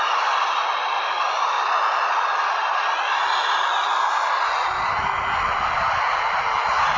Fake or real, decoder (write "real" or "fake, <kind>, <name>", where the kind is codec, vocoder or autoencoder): real